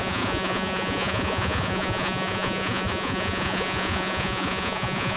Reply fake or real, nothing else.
fake